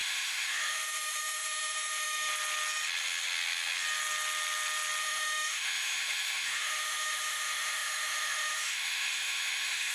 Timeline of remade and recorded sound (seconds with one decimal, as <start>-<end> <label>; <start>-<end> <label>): 0.0-2.3 remade; 2.3-5.0 recorded; 5.0-9.9 remade